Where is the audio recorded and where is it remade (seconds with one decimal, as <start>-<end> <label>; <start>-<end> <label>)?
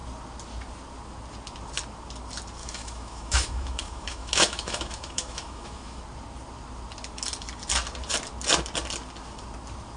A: 0.0-2.6 recorded; 2.6-6.0 remade; 6.0-10.0 recorded